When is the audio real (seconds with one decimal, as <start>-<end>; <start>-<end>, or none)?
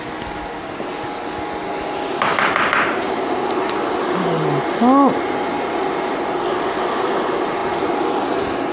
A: 0.0-8.7